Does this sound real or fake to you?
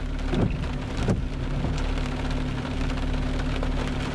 real